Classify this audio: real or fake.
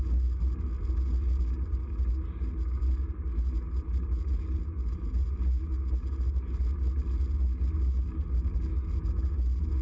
real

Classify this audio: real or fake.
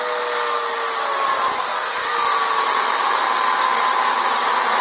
real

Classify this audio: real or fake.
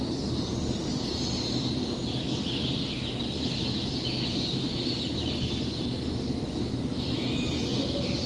real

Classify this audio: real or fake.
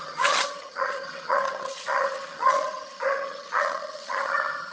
fake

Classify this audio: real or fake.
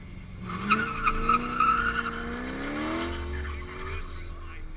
real